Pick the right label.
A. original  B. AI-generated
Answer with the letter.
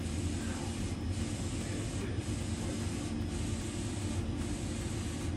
A